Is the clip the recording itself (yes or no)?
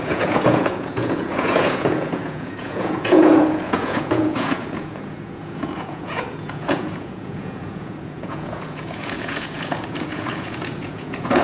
no